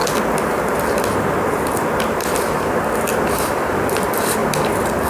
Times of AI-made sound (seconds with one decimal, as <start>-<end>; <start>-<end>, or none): none